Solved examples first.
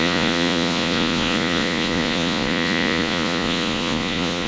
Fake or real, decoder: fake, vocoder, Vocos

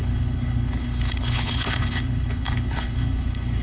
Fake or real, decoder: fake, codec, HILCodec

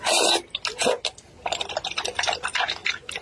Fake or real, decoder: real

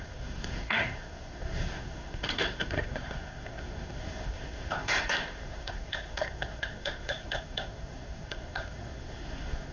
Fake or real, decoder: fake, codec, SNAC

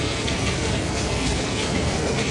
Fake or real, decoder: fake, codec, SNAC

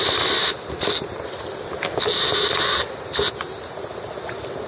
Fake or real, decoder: real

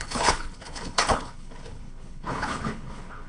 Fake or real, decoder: fake, codec, HILCodec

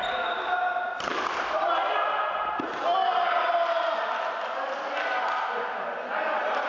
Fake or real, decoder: real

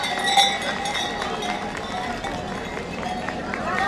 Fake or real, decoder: real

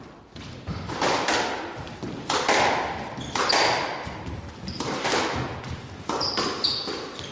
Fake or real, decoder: real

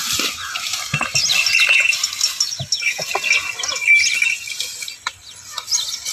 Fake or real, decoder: real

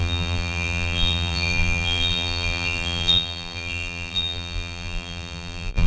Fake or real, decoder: fake, vocoder, BigVGAN v2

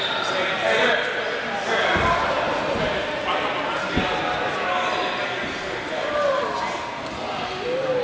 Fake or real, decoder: real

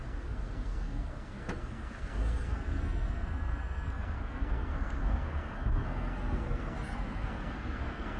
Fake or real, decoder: fake, codec, SNAC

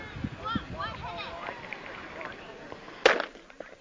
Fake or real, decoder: real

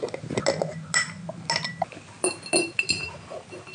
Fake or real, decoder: real